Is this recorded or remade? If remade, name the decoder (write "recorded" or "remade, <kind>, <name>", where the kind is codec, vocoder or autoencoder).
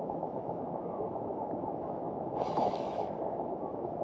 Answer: remade, autoencoder, DAC-VAE